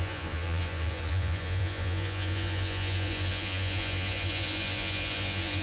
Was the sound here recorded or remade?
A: remade